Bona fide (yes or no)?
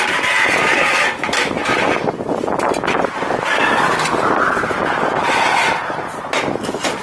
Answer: yes